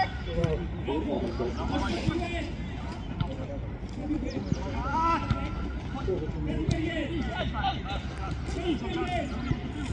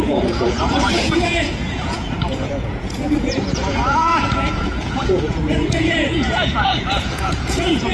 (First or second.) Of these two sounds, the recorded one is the first